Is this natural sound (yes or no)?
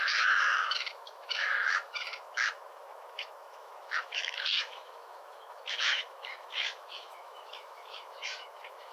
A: no